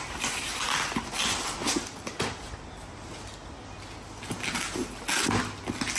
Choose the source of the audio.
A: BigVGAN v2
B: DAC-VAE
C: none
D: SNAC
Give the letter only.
C